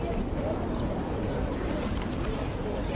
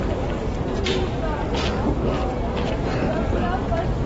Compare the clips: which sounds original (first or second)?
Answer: second